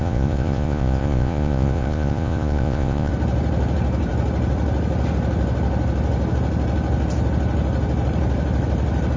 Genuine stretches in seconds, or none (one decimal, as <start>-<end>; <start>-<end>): 3.1-9.2